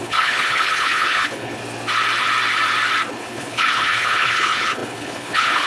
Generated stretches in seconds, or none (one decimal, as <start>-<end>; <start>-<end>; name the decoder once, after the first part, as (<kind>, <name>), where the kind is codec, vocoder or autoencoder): 0.0-1.6 (codec, HILCodec); 3.1-5.7